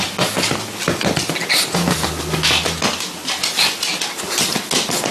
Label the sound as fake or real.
real